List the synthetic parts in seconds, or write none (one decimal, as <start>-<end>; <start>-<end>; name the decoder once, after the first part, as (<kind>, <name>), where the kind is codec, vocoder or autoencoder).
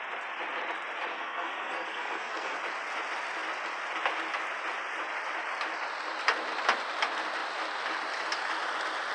1.1-2.6 (codec, SNAC)